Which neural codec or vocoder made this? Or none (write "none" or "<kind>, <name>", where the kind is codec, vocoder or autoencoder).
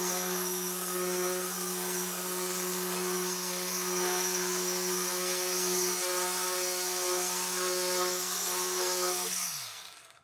codec, SNAC